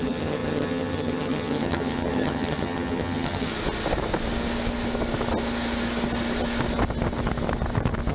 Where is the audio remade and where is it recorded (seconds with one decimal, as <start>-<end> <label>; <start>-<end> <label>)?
0.0-3.5 remade; 3.5-8.1 recorded

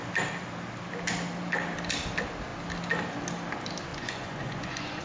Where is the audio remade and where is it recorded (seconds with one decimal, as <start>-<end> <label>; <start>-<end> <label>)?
0.0-3.9 recorded; 3.9-5.0 remade

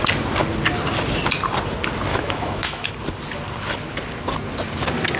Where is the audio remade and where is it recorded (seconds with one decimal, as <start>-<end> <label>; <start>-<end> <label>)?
0.0-2.1 recorded; 2.1-2.9 remade; 2.9-5.2 recorded

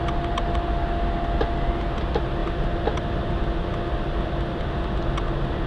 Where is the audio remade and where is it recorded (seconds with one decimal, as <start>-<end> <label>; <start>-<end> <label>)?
0.0-5.7 recorded

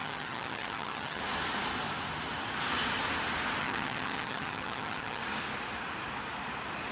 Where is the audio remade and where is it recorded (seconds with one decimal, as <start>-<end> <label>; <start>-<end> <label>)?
0.0-1.2 remade; 1.2-3.6 recorded; 3.6-5.2 remade; 5.2-6.9 recorded

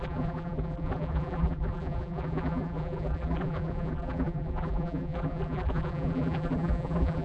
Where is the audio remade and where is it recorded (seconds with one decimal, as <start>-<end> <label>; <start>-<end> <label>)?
0.0-7.2 remade

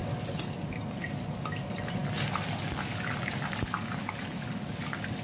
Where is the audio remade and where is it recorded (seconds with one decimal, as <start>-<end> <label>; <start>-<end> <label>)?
0.0-5.2 recorded

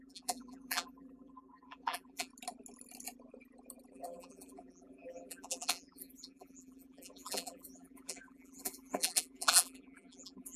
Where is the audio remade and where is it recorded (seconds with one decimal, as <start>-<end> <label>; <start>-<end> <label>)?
0.0-2.3 remade; 2.3-3.9 recorded; 3.9-10.6 remade